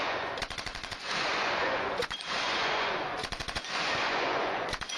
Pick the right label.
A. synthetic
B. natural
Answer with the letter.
A